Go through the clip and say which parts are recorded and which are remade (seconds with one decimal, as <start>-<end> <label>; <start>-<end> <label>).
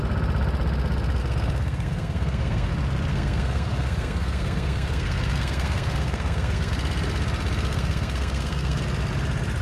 0.0-1.2 recorded; 1.2-2.7 remade; 2.7-3.1 recorded; 3.1-6.7 remade; 6.7-7.7 recorded; 7.7-8.8 remade; 8.8-9.6 recorded